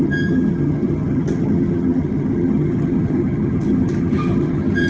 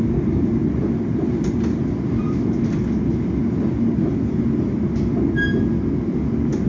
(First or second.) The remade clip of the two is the first